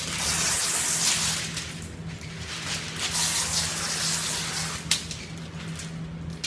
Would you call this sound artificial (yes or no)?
no